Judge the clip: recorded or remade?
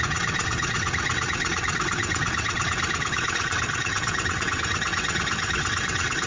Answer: remade